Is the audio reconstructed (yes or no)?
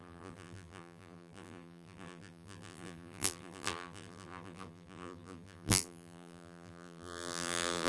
yes